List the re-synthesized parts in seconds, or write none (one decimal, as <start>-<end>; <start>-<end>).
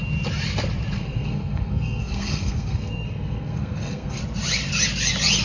1.0-4.2